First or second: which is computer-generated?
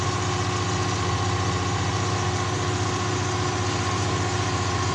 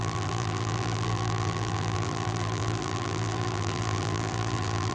second